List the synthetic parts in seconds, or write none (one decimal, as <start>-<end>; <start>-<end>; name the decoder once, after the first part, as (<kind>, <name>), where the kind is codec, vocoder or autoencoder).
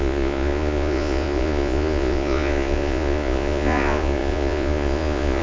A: 0.0-5.4 (vocoder, Vocos)